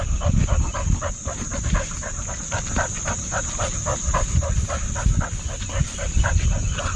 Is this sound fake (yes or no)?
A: no